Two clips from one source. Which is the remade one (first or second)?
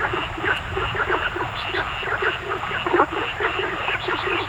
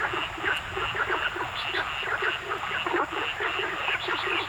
first